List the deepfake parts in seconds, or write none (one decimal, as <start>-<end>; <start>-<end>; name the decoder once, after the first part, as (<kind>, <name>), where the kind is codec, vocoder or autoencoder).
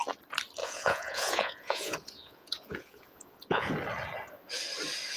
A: 0.6-3.7 (vocoder, Vocos)